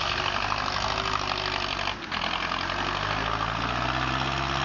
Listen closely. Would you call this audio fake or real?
real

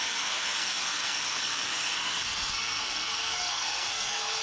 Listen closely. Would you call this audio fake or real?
fake